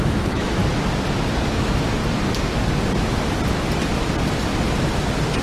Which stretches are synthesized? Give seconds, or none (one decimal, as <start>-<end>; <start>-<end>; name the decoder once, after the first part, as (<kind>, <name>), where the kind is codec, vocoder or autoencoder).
0.0-0.6 (autoencoder, DAC-VAE); 1.5-2.0